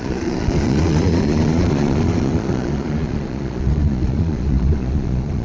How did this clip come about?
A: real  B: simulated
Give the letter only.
B